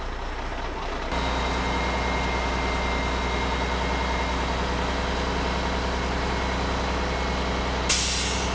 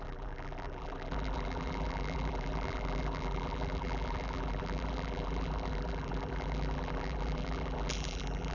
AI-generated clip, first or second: second